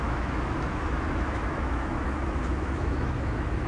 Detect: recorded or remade remade